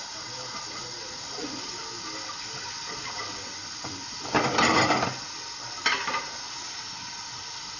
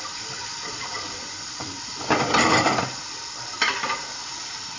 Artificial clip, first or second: second